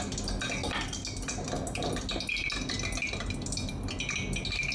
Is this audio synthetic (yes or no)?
no